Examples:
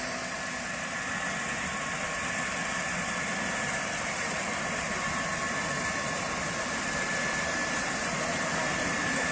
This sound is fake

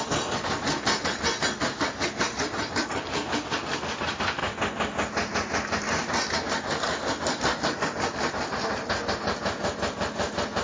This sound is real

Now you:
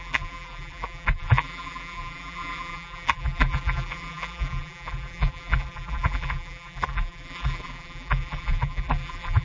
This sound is fake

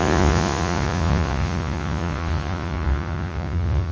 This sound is fake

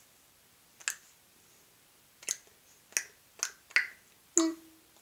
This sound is real